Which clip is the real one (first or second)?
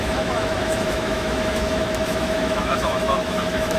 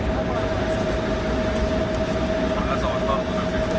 second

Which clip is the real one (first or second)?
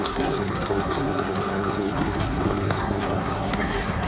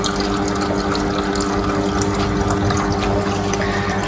second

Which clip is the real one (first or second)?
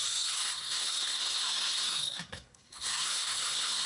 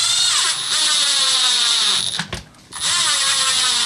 second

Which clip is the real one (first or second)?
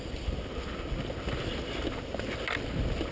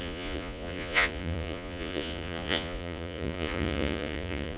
first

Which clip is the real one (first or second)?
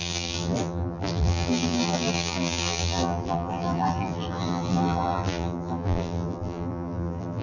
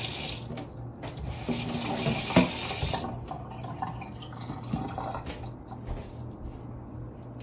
second